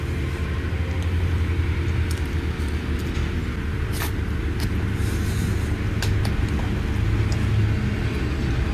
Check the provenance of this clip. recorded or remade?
recorded